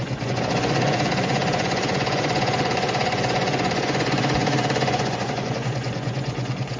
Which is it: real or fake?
fake